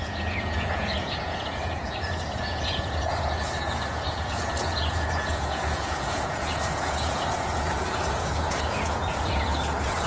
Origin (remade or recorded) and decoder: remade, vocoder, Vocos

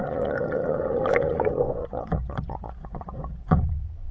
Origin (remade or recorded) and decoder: remade, vocoder, Vocos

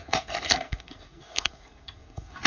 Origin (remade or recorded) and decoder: remade, codec, SNAC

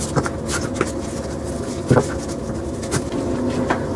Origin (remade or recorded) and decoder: recorded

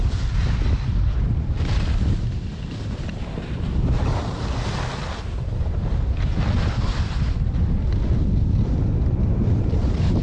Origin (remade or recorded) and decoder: recorded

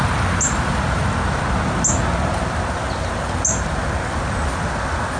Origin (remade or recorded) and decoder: recorded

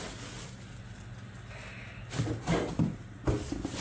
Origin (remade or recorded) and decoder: recorded